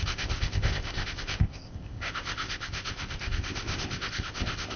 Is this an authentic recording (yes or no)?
no